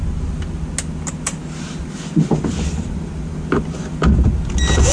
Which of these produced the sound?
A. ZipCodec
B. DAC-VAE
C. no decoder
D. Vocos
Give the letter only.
C